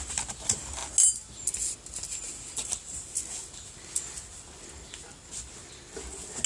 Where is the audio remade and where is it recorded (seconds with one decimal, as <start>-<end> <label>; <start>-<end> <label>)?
0.0-6.5 recorded